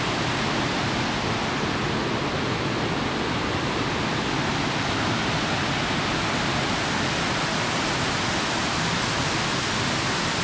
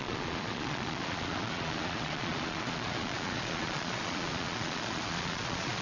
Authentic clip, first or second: first